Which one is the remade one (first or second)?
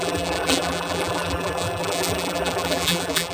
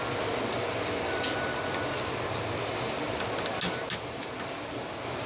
first